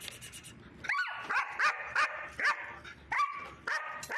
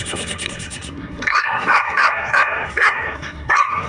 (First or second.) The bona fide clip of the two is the first